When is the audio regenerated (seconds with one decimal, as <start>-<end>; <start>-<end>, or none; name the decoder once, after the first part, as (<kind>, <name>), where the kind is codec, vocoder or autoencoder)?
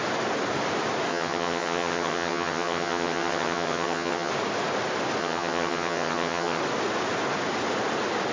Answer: 1.1-4.3 (vocoder, HiFi-GAN); 5.2-6.6